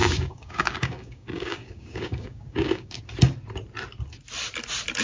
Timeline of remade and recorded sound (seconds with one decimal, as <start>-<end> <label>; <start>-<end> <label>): 0.0-3.0 remade; 3.0-5.0 recorded